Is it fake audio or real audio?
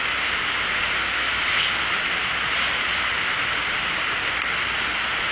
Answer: real